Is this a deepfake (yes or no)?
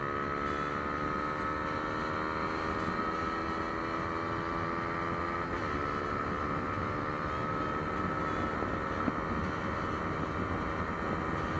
no